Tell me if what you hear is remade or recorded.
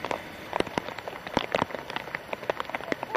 recorded